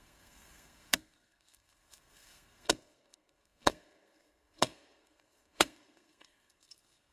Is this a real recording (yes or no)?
no